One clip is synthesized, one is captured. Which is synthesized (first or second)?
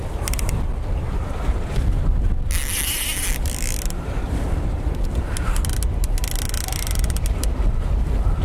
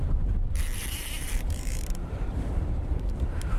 second